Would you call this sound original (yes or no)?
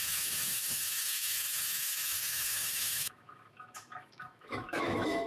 no